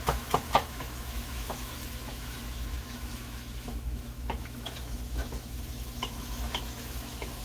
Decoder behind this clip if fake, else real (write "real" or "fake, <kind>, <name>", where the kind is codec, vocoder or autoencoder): fake, autoencoder, DAC-VAE